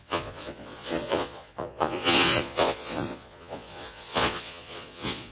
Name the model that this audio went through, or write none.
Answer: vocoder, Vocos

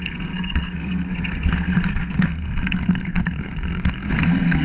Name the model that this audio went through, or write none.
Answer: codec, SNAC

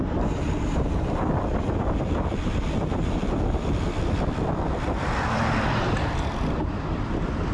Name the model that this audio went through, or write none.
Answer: vocoder, BigVGAN v2